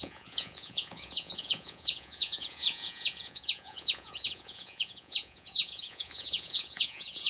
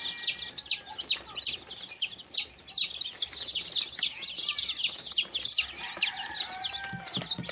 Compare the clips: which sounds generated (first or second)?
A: first